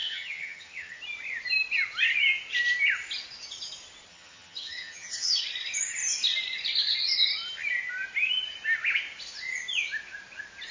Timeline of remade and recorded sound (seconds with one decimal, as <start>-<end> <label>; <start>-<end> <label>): 0.0-1.0 remade; 1.0-4.1 recorded; 4.1-5.4 remade; 5.4-10.7 recorded